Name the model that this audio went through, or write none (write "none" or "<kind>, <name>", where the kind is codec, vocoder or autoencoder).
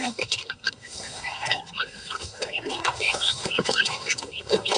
codec, SNAC